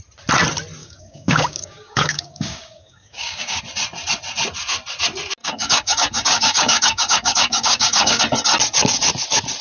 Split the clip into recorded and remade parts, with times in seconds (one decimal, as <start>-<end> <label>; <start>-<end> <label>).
0.0-0.8 recorded; 0.8-3.6 remade; 3.6-5.4 recorded; 5.4-8.2 remade; 8.2-9.6 recorded